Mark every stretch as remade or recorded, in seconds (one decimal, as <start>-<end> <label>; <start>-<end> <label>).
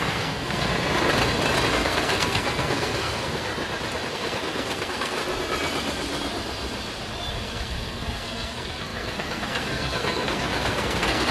0.0-0.7 remade; 0.7-1.7 recorded; 1.7-3.5 remade; 3.5-4.1 recorded; 4.1-5.2 remade; 5.2-7.3 recorded; 7.3-11.3 remade